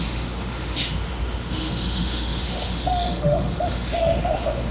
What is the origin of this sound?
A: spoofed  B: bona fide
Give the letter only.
A